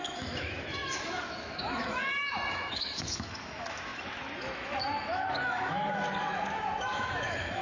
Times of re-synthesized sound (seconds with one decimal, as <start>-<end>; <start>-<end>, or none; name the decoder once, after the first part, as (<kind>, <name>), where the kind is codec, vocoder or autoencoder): 0.0-7.6 (autoencoder, DAC-VAE)